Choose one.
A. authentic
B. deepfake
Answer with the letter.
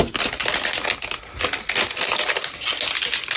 A